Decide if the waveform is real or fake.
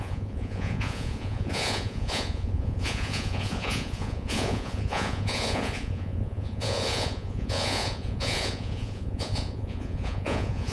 fake